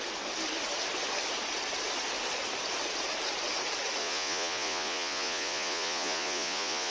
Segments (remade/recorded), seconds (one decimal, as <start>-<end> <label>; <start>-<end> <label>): 0.0-4.0 recorded; 4.0-6.9 remade